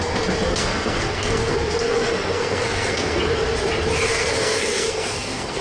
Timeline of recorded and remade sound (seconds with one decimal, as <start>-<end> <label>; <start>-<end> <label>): 0.0-0.5 recorded; 0.5-3.2 remade; 3.2-4.1 recorded; 4.1-5.6 remade